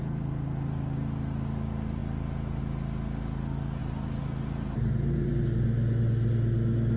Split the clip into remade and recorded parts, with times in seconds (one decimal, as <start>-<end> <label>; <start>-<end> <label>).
0.0-3.8 recorded; 3.8-5.4 remade; 5.4-7.0 recorded